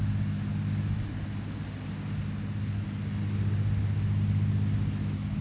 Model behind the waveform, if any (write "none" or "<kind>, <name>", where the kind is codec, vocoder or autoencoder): none